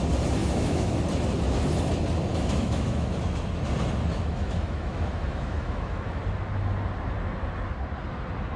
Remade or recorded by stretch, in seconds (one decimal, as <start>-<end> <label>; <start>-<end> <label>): 0.0-0.4 recorded; 0.4-1.0 remade; 1.0-2.3 recorded; 2.3-3.2 remade; 3.2-4.1 recorded; 4.1-6.2 remade; 6.2-8.6 recorded